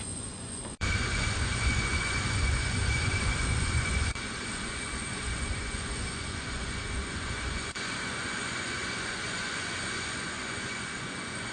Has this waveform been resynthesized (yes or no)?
yes